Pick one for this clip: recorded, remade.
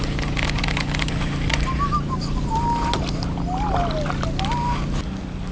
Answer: recorded